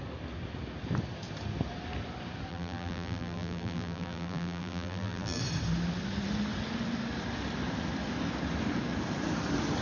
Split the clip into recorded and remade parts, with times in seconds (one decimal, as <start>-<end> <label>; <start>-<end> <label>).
0.0-2.5 recorded; 2.5-5.4 remade; 5.4-9.8 recorded